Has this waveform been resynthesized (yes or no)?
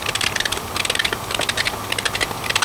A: no